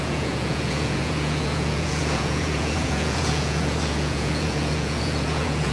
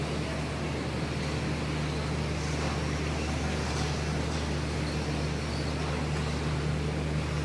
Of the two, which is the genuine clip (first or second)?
second